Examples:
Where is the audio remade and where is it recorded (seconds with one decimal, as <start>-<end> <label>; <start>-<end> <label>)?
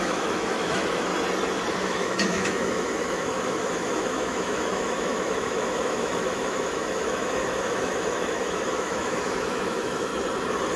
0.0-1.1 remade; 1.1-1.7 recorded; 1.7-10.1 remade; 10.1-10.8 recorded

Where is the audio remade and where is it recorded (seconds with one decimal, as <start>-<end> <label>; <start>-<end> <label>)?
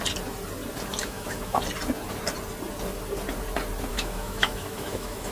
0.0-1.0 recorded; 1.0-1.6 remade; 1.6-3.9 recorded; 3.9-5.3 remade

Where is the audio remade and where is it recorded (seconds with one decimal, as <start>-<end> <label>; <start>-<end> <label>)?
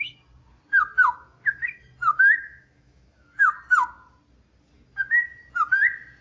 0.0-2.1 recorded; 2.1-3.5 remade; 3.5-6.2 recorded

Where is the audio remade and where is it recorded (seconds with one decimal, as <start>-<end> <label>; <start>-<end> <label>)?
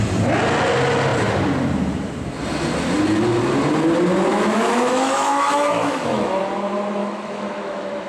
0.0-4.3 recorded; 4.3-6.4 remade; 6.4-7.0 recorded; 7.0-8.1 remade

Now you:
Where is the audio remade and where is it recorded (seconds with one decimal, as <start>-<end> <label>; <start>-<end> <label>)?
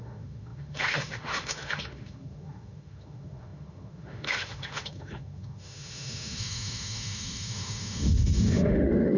0.0-9.2 remade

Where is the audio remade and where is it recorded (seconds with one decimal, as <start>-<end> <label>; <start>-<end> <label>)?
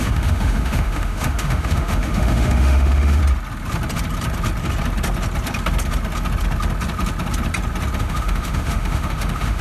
0.0-3.2 remade; 3.2-8.0 recorded; 8.0-9.6 remade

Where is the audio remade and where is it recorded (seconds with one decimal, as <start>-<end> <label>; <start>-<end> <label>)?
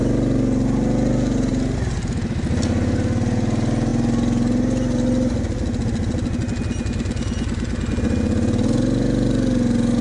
0.0-10.0 recorded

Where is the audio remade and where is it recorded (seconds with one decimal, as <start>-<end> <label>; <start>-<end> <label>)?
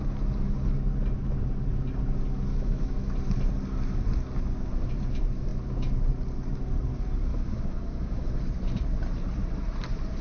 0.0-2.5 recorded; 2.5-3.1 remade; 3.1-7.3 recorded; 7.3-8.4 remade; 8.4-10.2 recorded